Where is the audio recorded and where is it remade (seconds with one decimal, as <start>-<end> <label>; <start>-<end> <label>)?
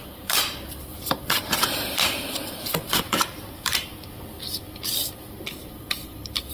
0.0-3.9 remade; 3.9-5.6 recorded; 5.6-6.5 remade